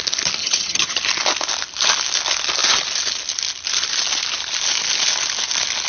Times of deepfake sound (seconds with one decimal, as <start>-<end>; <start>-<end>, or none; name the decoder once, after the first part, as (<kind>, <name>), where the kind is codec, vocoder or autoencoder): 0.4-1.0 (vocoder, HiFi-GAN)

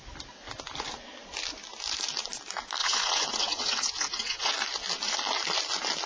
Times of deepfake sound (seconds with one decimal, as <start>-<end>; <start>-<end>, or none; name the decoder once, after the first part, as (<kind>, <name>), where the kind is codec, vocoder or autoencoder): 2.8-4.5 (vocoder, WaveNeXt)

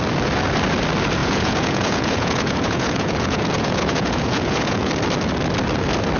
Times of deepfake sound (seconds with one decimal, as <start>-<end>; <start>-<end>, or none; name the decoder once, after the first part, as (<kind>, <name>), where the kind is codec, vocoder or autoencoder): 1.2-4.9 (vocoder, Vocos)